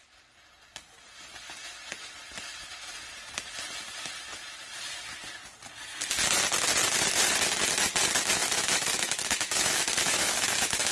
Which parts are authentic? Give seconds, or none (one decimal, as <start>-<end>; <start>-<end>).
0.0-8.4